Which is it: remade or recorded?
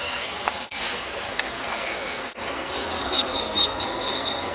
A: remade